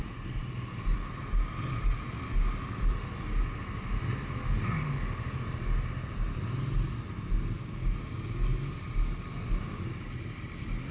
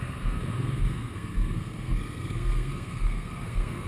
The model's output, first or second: second